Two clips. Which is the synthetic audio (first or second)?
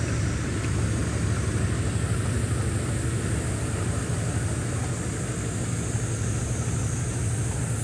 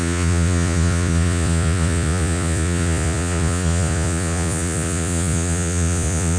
second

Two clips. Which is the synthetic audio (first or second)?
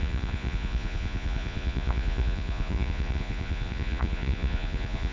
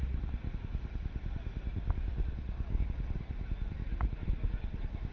first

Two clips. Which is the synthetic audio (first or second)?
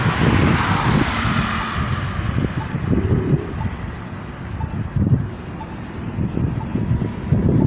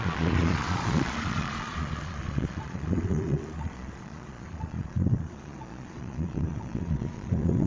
second